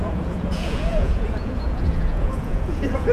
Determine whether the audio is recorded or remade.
remade